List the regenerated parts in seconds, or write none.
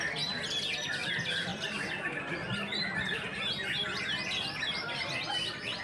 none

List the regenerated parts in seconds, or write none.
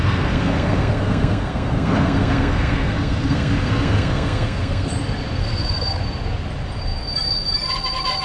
0.0-4.9; 5.4-6.0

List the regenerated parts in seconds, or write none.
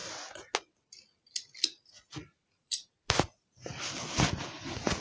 2.4-3.5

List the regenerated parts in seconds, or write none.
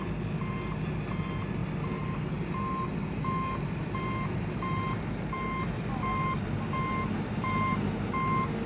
7.3-8.1